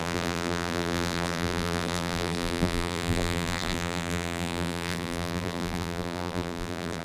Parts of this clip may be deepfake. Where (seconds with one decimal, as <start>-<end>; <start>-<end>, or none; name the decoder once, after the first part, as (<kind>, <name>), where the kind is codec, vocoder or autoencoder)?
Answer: 0.0-7.0 (vocoder, BigVGAN v2)